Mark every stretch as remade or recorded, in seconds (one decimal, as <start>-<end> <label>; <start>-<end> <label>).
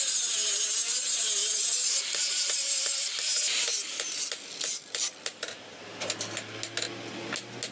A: 0.0-1.4 recorded; 1.4-3.0 remade; 3.0-5.3 recorded; 5.3-6.1 remade; 6.1-7.7 recorded